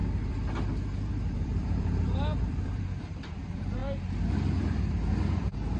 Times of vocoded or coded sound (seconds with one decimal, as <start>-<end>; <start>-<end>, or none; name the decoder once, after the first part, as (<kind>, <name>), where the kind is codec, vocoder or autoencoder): 0.0-3.8 (vocoder, BigVGAN v2); 4.6-5.8